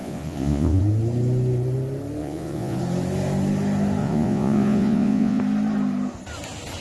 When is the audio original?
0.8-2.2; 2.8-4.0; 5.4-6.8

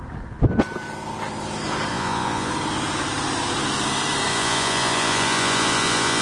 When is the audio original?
0.0-1.9; 2.5-4.3